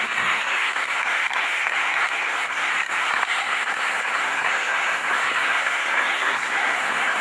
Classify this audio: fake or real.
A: fake